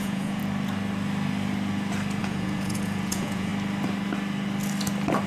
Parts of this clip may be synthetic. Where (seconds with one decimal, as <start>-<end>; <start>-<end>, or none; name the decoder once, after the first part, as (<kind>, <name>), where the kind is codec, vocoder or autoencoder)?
0.0-0.4 (vocoder, Vocos); 2.2-3.5